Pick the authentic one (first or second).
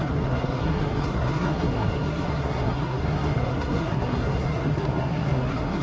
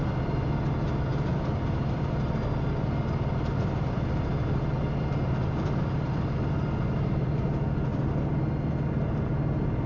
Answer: second